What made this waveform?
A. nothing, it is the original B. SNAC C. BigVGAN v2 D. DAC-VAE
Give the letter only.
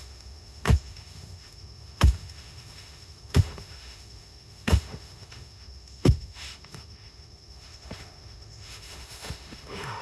D